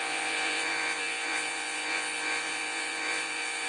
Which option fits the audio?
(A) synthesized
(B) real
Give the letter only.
A